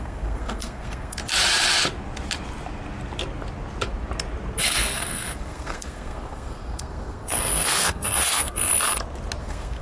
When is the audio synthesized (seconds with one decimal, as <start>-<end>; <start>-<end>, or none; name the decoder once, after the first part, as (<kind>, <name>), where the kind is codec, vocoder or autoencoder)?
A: 0.0-1.2 (codec, SNAC); 4.6-8.7; 9.4-9.8